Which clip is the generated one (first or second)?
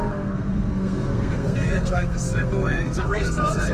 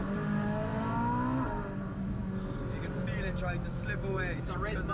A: first